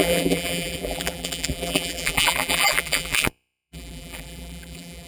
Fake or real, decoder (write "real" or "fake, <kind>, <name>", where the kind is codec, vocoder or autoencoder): fake, vocoder, BigVGAN v2